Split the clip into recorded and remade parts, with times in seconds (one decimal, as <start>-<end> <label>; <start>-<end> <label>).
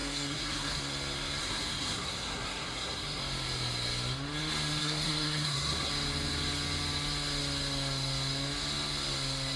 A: 0.0-0.8 remade; 0.8-1.4 recorded; 1.4-3.2 remade; 3.2-4.8 recorded; 4.8-5.9 remade; 5.9-9.6 recorded